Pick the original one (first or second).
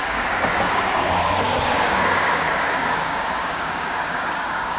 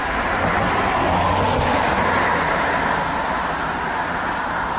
second